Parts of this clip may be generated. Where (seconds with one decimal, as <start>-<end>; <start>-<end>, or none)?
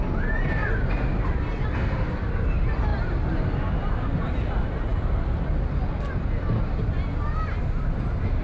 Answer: none